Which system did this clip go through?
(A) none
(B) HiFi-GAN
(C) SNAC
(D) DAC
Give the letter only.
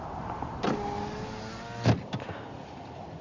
A